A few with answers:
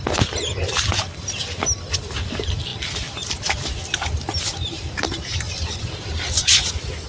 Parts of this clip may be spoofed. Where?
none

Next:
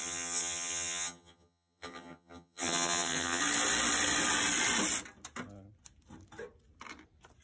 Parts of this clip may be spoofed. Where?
0.0-3.4 (vocoder, HiFi-GAN)